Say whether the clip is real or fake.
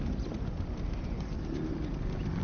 real